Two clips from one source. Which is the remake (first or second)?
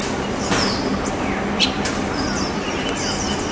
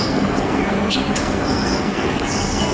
second